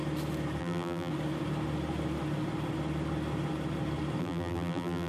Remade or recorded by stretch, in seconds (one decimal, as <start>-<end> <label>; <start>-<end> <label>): 0.0-0.6 recorded; 0.6-1.1 remade; 1.1-4.2 recorded; 4.2-5.1 remade